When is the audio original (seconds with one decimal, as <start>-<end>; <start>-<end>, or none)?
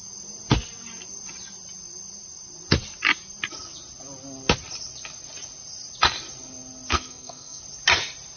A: 0.0-6.9; 7.6-8.4